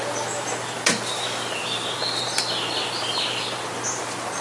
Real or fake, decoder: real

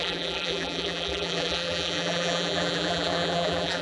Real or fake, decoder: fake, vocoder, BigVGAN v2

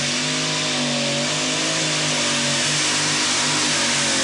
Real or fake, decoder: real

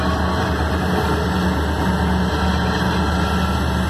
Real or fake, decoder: real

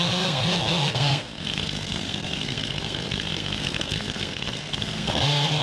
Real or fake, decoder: fake, codec, SNAC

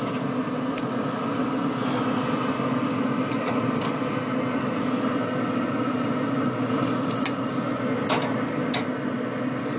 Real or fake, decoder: real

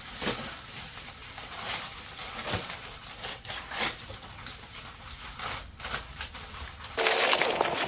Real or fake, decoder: real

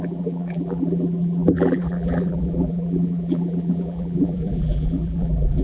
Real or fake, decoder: fake, vocoder, BigVGAN v2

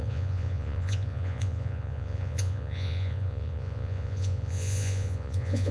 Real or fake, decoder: fake, vocoder, Vocos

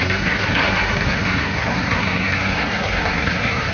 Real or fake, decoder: fake, codec, SNAC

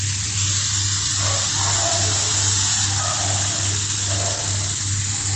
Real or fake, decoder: real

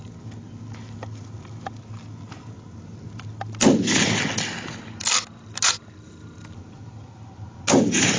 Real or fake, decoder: real